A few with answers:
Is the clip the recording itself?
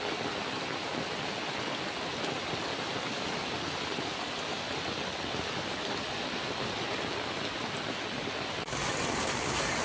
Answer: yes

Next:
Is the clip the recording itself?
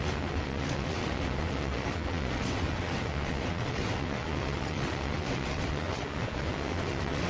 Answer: no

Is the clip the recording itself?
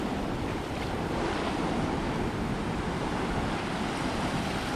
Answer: no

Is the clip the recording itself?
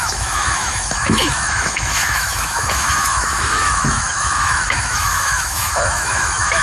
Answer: no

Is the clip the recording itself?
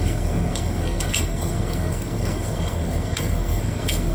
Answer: no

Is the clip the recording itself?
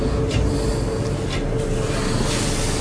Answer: yes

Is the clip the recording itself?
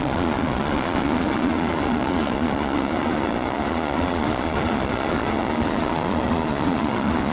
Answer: no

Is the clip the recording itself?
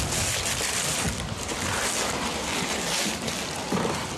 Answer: yes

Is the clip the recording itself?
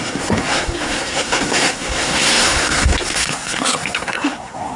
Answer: no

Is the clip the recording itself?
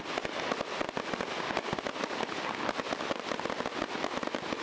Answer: yes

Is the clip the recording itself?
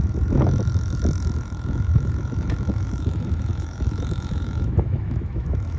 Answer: no